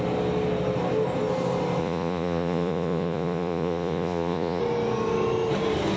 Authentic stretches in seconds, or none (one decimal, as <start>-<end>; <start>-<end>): 0.0-1.8; 4.6-6.0